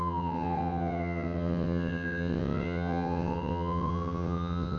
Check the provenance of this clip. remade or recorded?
remade